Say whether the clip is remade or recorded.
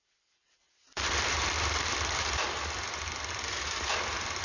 remade